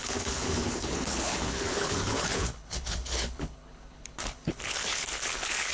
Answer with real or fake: fake